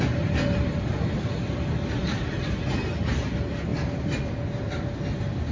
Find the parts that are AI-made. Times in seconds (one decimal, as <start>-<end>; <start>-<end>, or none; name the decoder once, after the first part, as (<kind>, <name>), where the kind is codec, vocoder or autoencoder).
none